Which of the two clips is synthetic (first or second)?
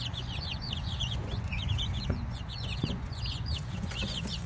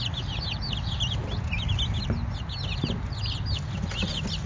first